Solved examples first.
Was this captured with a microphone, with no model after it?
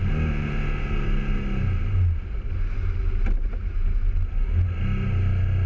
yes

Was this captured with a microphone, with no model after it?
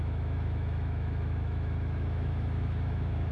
no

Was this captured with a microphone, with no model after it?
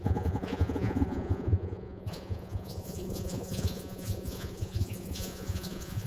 no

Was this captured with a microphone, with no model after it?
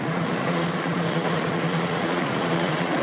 no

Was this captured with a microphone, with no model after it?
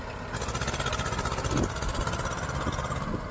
yes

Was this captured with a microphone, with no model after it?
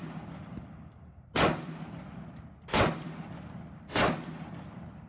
yes